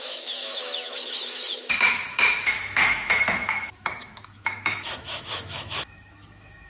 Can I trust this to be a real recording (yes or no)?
no